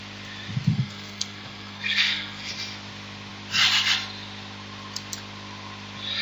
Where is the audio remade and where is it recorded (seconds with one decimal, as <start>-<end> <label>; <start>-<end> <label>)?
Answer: 0.0-0.7 recorded; 0.7-2.5 remade; 2.5-6.2 recorded